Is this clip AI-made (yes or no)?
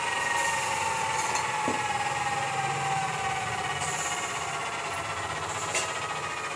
no